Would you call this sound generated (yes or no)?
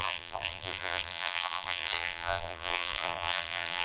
yes